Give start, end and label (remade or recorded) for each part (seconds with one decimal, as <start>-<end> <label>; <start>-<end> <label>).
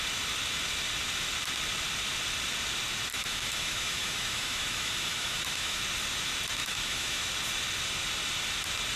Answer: 0.0-3.1 recorded; 3.1-5.8 remade; 5.8-6.6 recorded; 6.6-7.3 remade; 7.3-9.0 recorded